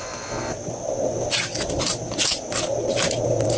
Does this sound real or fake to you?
real